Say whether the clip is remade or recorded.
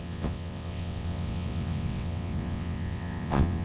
remade